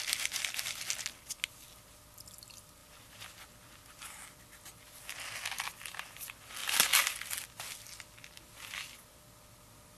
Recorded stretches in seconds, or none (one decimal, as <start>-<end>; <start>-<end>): 0.0-10.0